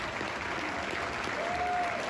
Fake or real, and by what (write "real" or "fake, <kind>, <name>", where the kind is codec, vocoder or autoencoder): real